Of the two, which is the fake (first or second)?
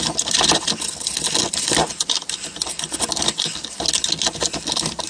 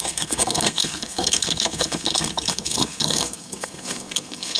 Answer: second